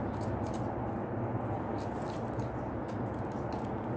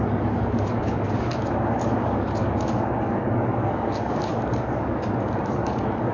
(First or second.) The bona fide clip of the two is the first